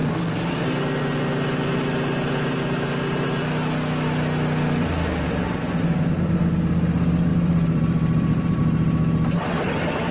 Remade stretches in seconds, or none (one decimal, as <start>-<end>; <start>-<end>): 7.3-8.6